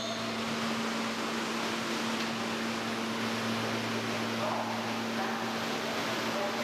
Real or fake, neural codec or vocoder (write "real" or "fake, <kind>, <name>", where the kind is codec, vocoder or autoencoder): real